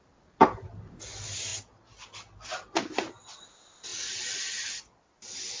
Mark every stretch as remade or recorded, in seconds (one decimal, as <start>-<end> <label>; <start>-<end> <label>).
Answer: 0.0-5.6 recorded